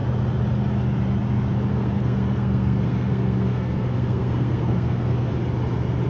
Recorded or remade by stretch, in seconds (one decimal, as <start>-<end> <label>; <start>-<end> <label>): 0.0-1.7 recorded; 1.7-5.3 remade; 5.3-6.1 recorded